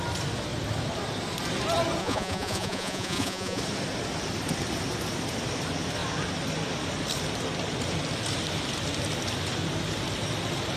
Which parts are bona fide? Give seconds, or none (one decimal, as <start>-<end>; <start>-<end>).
0.0-2.0; 3.6-10.8